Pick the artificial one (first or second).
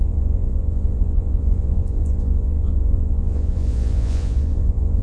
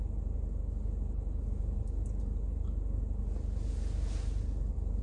first